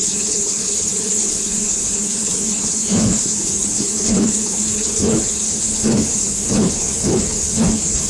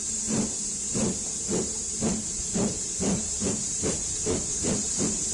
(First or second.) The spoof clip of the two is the first